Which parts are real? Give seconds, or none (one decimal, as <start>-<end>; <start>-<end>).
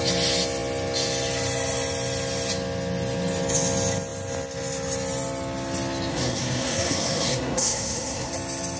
0.0-6.1; 8.3-8.8